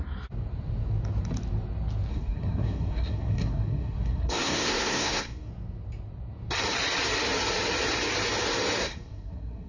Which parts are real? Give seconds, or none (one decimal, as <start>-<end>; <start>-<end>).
0.0-2.1; 5.5-8.8